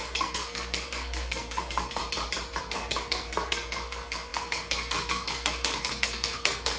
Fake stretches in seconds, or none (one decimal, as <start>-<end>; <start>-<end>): 0.0-2.0; 2.6-6.8